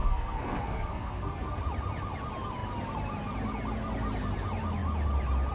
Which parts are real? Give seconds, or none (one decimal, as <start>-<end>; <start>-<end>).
1.6-5.5